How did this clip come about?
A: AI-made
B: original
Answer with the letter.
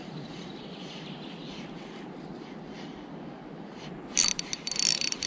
A